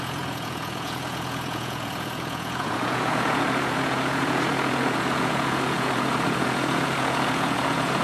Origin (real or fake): fake